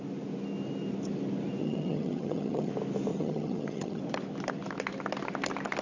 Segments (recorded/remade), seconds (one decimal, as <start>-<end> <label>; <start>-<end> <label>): 0.0-1.6 recorded; 1.6-2.7 remade; 2.7-3.1 recorded; 3.1-4.0 remade; 4.0-5.8 recorded